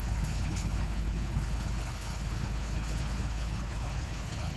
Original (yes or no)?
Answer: no